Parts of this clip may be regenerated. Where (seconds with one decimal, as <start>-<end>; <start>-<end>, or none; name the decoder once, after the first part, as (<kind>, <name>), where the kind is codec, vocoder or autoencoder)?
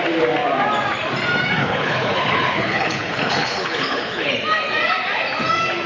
1.6-4.3 (codec, HILCodec)